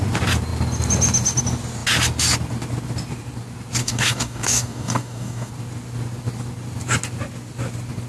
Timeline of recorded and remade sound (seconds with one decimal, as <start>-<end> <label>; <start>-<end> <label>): 0.0-3.8 recorded; 3.8-5.5 remade; 5.5-8.1 recorded